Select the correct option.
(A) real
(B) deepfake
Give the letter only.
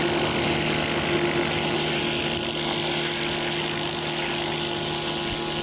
A